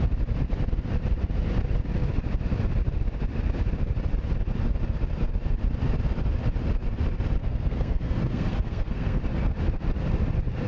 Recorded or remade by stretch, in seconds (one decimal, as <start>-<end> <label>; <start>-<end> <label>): 0.0-7.4 recorded; 7.4-9.2 remade; 9.2-10.7 recorded